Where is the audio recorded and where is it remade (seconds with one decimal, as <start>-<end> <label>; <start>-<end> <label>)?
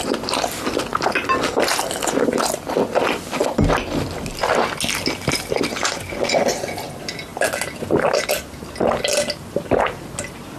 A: 0.0-10.6 recorded